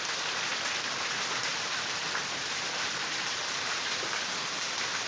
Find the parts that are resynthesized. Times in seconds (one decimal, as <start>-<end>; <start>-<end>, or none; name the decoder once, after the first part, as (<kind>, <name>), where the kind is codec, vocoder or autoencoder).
1.5-3.4 (vocoder, BigVGAN v2)